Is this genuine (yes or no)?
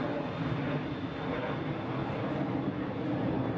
yes